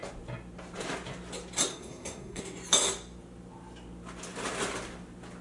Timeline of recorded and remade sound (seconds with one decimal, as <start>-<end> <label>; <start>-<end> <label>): 0.0-1.7 recorded; 1.7-2.4 remade; 2.4-5.4 recorded